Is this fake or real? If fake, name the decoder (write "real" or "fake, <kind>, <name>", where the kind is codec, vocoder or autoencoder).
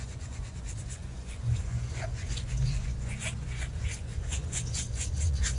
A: fake, vocoder, Vocos